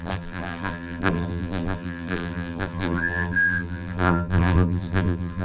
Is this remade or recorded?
remade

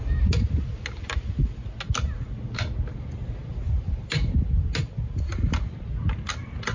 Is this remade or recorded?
recorded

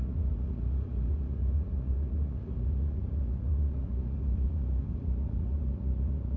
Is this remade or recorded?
remade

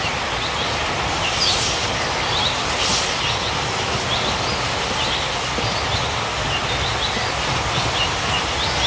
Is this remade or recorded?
recorded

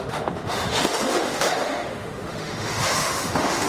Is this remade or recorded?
remade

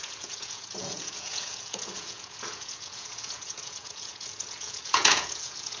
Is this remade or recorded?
remade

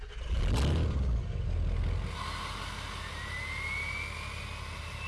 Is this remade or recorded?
recorded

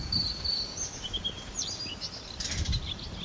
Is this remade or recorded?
recorded